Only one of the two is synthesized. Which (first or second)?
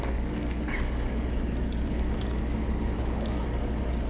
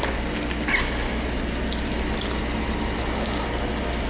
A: first